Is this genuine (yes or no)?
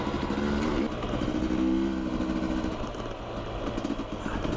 yes